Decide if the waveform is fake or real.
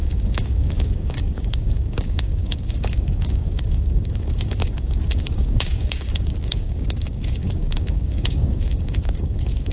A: fake